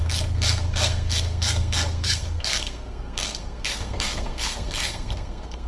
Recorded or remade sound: remade